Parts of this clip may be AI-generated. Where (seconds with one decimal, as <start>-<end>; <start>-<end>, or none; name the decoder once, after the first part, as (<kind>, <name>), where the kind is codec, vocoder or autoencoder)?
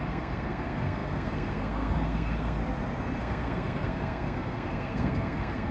0.0-2.6 (codec, SNAC); 3.2-5.7